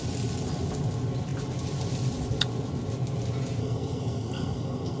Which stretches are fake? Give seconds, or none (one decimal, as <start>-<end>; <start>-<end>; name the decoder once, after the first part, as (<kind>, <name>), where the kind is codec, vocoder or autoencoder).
3.6-5.0 (codec, SNAC)